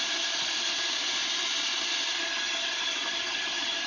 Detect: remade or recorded recorded